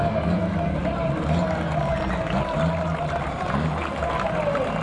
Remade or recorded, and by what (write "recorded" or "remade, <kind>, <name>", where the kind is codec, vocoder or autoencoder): recorded